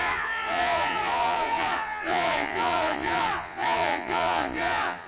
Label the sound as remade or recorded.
remade